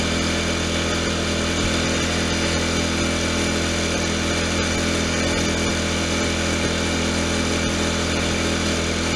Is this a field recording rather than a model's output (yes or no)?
yes